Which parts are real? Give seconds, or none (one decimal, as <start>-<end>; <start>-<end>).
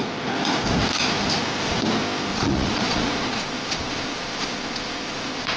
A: 0.0-2.3